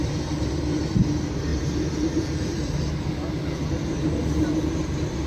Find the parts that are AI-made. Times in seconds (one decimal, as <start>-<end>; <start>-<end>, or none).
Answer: none